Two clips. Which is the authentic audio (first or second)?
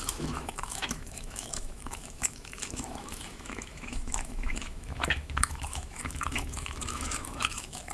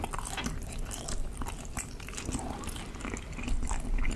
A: second